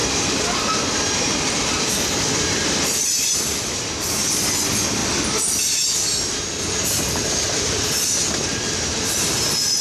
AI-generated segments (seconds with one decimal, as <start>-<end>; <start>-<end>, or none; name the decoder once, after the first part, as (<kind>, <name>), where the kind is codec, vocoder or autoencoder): 0.0-5.0 (vocoder, BigVGAN v2); 6.6-9.8